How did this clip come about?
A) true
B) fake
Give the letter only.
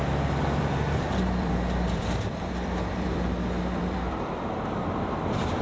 B